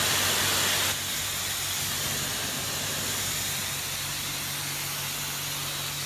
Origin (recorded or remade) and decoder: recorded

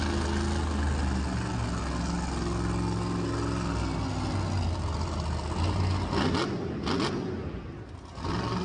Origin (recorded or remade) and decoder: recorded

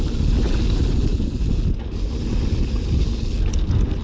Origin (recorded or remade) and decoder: recorded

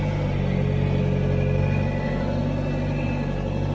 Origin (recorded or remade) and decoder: recorded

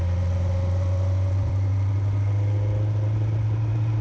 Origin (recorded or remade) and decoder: recorded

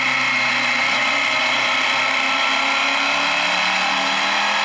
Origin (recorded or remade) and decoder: recorded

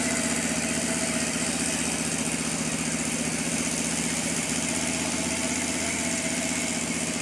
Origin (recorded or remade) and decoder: recorded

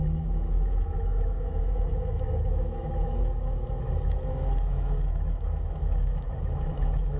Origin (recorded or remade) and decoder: remade, autoencoder, DAC-VAE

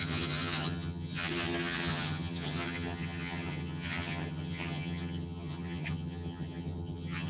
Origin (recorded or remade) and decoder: remade, vocoder, HiFi-GAN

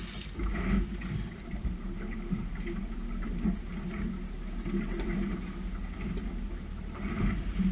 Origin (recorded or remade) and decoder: recorded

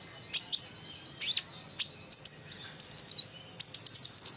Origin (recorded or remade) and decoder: recorded